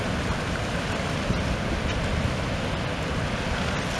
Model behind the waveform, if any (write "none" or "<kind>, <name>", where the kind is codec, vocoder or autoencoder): none